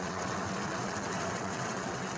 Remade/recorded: remade